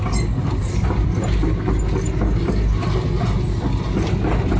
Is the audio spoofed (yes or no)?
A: no